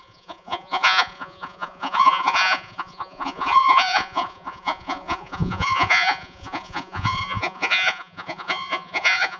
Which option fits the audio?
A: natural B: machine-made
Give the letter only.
B